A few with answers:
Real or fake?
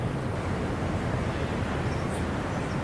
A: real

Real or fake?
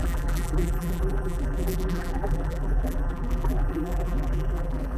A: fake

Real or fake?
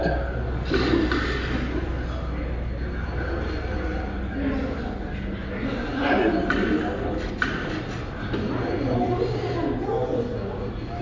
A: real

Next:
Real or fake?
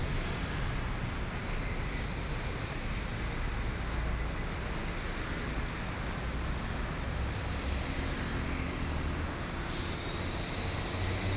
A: real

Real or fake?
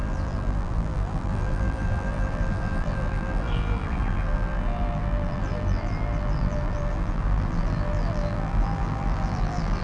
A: fake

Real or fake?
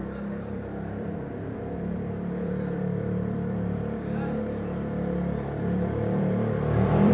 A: fake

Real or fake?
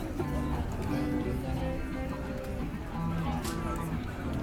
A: real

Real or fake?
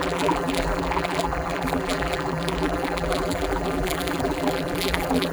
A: fake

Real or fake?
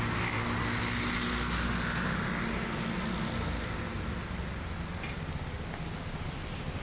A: real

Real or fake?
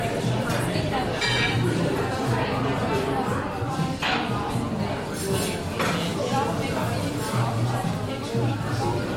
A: real